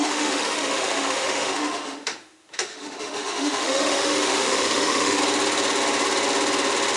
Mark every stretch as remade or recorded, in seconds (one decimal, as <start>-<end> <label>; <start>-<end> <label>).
0.0-5.2 remade; 5.2-7.0 recorded